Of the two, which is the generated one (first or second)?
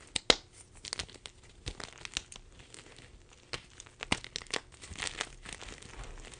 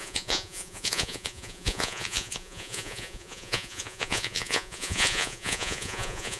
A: second